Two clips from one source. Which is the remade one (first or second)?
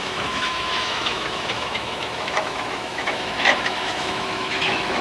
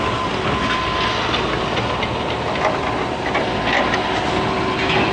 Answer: first